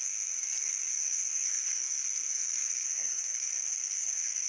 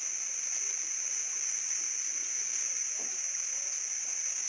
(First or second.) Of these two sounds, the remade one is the first